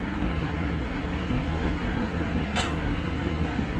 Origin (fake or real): fake